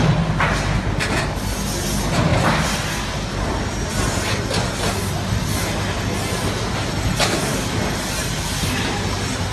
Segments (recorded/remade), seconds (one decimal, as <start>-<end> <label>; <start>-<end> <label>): 0.0-9.5 recorded